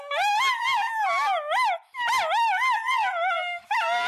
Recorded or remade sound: recorded